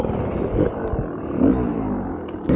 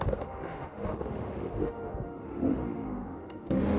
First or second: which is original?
first